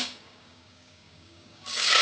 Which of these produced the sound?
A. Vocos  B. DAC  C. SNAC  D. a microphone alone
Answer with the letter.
B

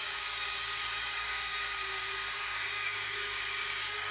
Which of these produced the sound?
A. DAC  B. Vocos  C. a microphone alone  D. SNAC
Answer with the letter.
A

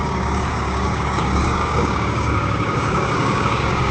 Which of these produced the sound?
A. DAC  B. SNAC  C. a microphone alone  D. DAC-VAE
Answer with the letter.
A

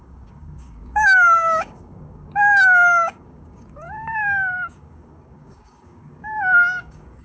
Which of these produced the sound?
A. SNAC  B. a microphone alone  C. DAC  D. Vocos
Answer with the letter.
C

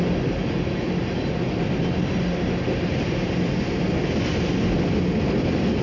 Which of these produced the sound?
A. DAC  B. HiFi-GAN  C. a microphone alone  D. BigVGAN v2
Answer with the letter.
C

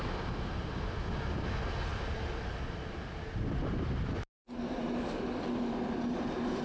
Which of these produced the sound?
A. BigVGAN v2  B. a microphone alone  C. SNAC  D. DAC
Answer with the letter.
B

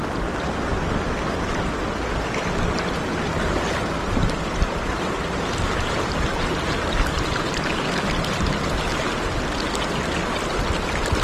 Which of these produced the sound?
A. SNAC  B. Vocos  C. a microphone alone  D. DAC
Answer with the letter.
C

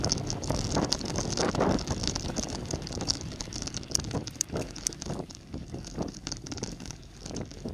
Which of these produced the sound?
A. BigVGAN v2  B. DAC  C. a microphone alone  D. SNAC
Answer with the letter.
B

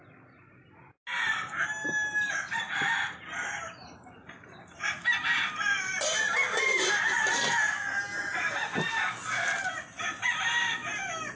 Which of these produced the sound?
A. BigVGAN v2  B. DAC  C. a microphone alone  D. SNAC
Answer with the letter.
C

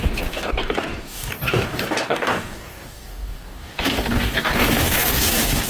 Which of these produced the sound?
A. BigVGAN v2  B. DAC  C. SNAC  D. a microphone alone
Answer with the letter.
B